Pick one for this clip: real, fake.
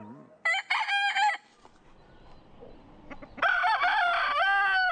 real